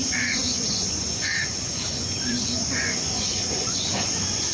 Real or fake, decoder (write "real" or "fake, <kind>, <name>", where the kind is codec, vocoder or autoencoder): fake, vocoder, Vocos